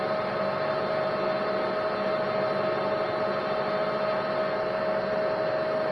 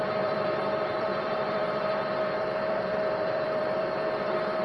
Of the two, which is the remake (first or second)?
second